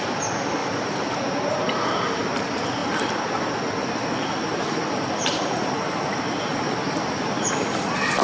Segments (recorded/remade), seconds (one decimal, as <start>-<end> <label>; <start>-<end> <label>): 0.0-0.6 recorded; 0.6-1.1 remade; 1.1-2.8 recorded; 2.8-3.4 remade; 3.4-3.8 recorded; 3.8-8.2 remade